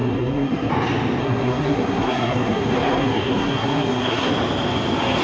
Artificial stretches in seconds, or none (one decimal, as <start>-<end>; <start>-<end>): 0.0-0.7; 1.2-4.3